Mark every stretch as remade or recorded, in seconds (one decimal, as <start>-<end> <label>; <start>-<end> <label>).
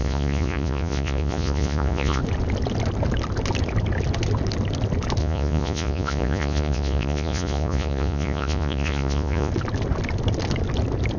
0.0-2.2 remade; 2.2-5.2 recorded; 5.2-9.5 remade; 9.5-11.2 recorded